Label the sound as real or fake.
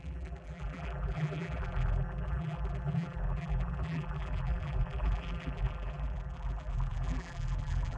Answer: fake